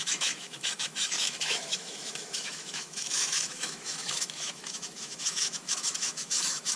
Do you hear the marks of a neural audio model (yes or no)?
yes